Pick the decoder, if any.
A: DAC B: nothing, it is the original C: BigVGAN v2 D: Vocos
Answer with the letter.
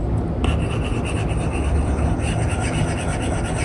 B